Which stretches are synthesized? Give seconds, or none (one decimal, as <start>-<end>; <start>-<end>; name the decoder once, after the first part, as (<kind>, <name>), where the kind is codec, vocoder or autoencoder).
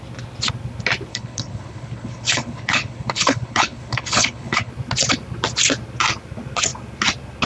1.1-4.7 (codec, HILCodec)